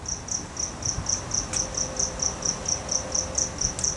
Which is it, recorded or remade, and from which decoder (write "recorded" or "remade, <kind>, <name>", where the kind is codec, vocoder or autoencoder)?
recorded